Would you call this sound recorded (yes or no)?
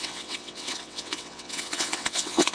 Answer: no